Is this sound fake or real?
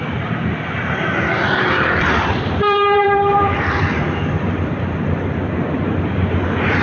fake